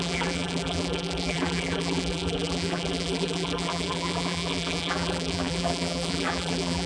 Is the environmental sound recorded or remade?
remade